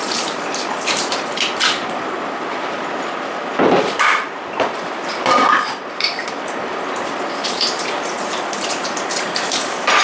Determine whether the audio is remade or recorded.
remade